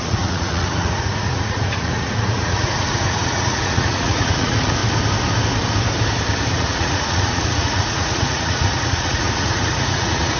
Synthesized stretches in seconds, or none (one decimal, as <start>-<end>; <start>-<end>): 0.0-4.8; 6.5-10.4